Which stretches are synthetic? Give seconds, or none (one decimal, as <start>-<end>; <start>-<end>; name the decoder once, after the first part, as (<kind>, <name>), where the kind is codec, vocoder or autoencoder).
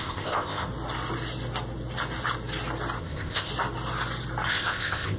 0.0-0.7 (codec, ZipCodec); 3.0-3.5; 4.5-5.2